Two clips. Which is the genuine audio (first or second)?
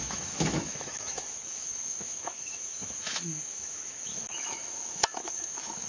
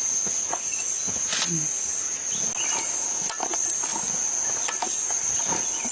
second